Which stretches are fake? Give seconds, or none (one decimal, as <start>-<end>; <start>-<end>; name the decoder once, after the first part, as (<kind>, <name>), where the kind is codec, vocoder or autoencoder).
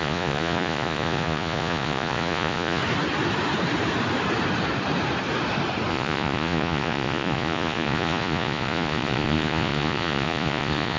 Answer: 0.0-2.8 (vocoder, Vocos); 5.9-11.0